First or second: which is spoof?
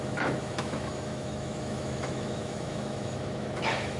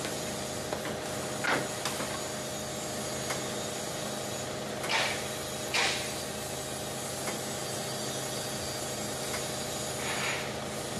first